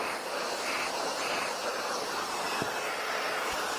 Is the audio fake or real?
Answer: real